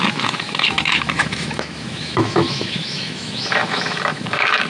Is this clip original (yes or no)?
no